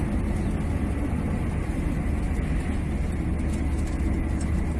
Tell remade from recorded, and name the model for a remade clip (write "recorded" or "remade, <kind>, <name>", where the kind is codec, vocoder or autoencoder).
recorded